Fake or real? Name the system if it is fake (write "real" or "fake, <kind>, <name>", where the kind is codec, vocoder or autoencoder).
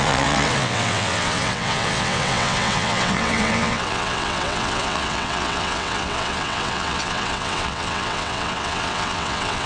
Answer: fake, vocoder, WaveNeXt